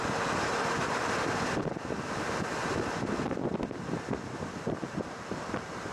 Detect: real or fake real